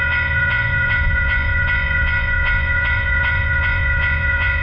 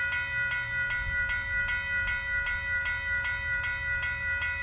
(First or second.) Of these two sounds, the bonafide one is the second